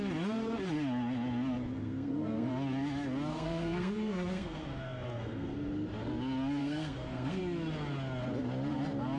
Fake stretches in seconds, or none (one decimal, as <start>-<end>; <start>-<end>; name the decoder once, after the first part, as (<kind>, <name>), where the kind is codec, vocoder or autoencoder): 1.8-2.5 (codec, SNAC); 3.3-5.7; 6.6-7.4